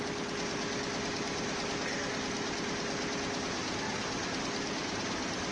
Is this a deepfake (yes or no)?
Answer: no